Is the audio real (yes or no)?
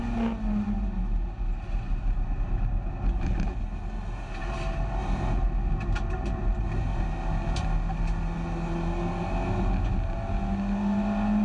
yes